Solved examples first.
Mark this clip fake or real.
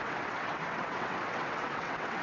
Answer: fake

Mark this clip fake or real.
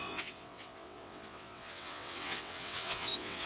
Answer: fake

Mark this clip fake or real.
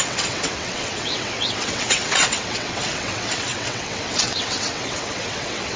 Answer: fake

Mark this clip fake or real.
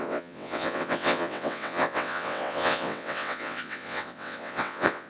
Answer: fake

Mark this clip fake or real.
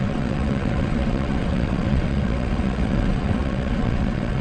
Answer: fake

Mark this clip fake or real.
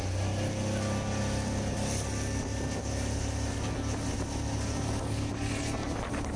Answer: real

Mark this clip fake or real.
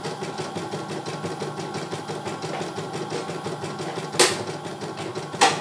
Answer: real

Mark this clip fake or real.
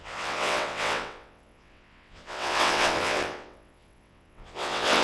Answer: fake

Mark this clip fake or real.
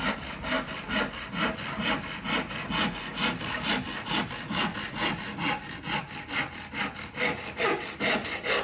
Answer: real